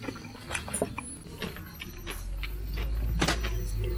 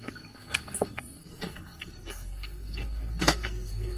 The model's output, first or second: second